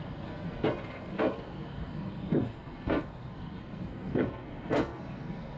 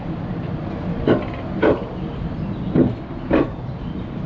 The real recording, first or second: second